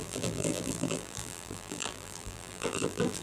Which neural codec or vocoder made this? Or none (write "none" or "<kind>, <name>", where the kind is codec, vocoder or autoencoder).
vocoder, BigVGAN v2